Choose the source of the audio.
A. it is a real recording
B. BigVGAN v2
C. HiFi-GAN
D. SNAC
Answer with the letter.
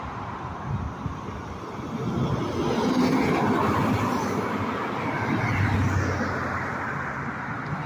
A